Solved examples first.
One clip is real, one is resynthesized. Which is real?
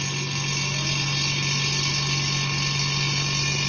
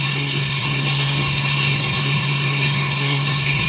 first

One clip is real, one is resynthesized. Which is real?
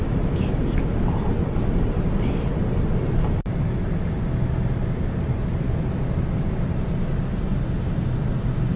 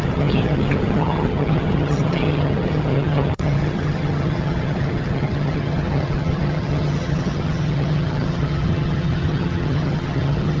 first